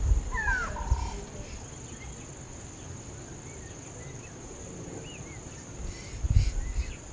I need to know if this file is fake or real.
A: real